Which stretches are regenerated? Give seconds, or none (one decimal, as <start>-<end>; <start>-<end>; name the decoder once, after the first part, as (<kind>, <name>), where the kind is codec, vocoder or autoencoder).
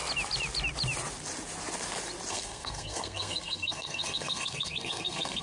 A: 2.3-5.4 (codec, SNAC)